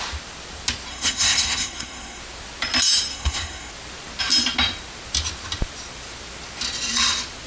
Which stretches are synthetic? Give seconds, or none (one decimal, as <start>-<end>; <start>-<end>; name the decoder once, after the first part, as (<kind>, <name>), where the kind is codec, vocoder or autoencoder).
0.9-2.2 (codec, SNAC); 3.1-3.7